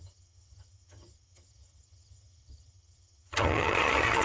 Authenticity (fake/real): fake